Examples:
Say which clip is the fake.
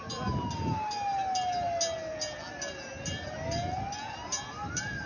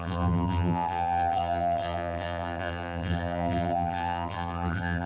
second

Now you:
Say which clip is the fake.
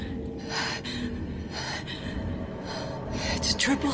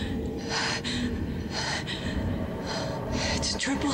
second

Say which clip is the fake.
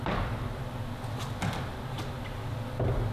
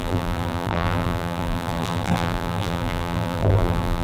second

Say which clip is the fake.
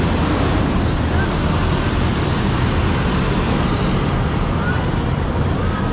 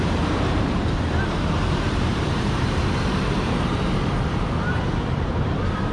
second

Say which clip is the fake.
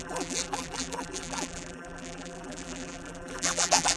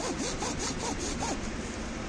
first